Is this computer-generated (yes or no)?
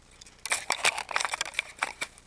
no